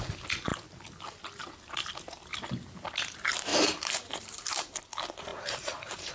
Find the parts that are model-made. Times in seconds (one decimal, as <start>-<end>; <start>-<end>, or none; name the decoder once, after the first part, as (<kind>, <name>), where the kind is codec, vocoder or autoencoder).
3.5-4.8 (vocoder, BigVGAN v2); 5.3-6.1